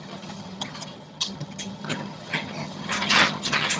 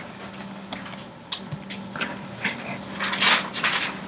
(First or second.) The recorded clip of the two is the second